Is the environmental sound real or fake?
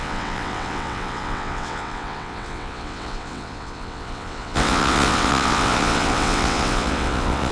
fake